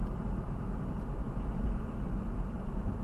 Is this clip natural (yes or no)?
no